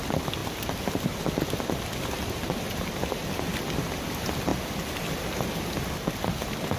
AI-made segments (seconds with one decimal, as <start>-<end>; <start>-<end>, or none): none